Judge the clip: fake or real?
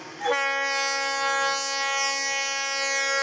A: real